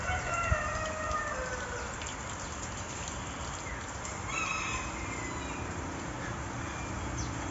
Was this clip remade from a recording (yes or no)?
no